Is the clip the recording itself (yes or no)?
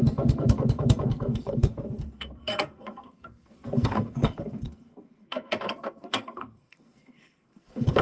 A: no